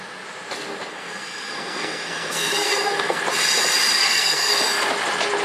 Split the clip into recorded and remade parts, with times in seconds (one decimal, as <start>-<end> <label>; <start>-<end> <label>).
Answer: 0.0-0.9 recorded; 0.9-3.2 remade; 3.2-4.0 recorded; 4.0-4.6 remade; 4.6-5.4 recorded